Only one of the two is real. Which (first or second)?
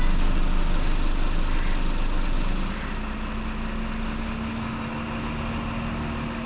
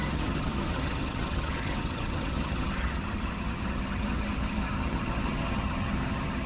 first